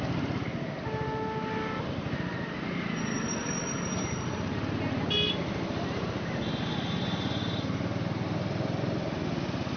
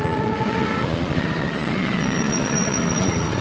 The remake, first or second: second